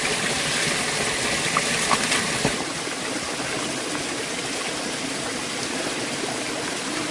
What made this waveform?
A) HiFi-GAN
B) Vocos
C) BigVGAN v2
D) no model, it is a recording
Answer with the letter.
D